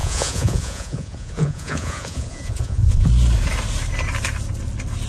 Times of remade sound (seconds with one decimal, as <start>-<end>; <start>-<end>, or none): 0.0-3.1